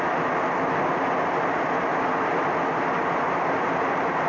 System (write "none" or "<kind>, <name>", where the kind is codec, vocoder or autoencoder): none